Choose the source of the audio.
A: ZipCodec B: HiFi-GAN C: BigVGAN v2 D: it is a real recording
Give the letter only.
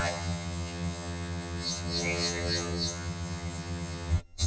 B